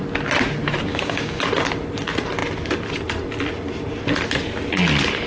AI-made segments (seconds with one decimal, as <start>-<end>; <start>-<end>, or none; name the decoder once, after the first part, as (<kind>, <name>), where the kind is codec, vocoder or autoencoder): 0.9-1.4 (codec, DAC)